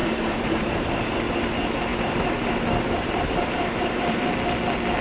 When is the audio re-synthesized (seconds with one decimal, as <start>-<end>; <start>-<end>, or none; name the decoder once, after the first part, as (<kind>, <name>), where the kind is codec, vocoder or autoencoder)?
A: 0.0-1.2 (vocoder, BigVGAN v2); 1.9-4.3